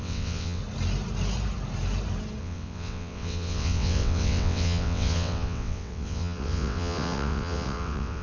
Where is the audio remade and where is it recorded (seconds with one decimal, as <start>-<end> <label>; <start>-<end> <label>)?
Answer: 0.0-0.6 remade; 0.6-2.4 recorded; 2.4-8.2 remade